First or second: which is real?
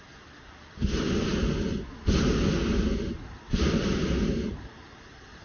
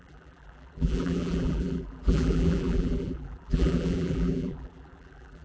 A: first